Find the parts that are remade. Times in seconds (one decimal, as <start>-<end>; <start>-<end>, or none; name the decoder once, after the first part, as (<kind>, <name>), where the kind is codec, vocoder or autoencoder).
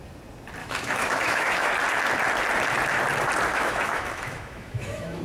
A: 0.6-1.7 (autoencoder, DAC-VAE); 3.5-5.2